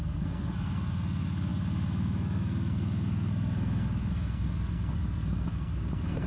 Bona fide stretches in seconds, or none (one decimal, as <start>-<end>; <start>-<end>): none